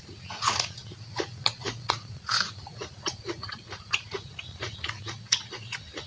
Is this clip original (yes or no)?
no